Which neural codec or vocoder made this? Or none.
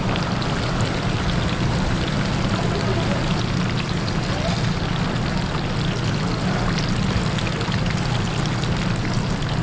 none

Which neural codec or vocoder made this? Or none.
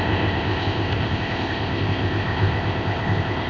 codec, ZipCodec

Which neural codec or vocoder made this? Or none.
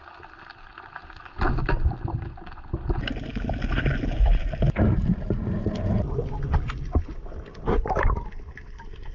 none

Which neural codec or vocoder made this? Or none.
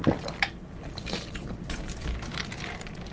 none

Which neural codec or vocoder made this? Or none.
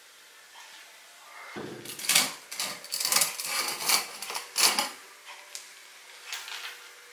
none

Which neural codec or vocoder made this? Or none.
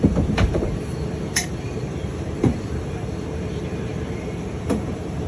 vocoder, BigVGAN v2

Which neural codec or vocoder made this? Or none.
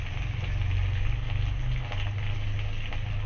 none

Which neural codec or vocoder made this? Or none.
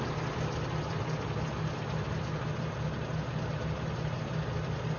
none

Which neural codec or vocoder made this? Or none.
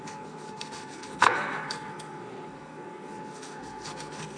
codec, SNAC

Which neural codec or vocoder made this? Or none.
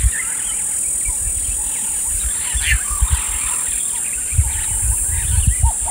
none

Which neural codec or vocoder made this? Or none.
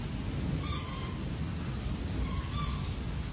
none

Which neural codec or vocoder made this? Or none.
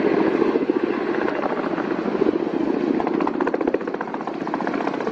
none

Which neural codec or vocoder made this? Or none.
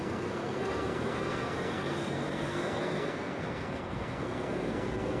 codec, SNAC